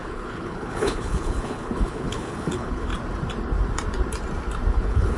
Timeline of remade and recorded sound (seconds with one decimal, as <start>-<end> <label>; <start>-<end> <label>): 0.0-2.9 remade; 2.9-4.7 recorded; 4.7-5.2 remade